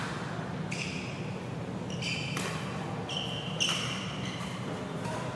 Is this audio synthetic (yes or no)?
no